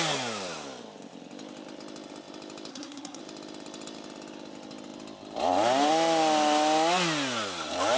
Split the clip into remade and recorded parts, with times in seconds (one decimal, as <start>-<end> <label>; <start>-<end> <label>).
0.0-2.7 recorded; 2.7-3.2 remade; 3.2-8.0 recorded